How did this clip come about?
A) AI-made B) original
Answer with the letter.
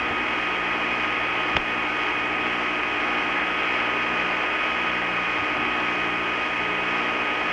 B